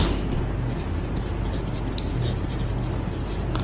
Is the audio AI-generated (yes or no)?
no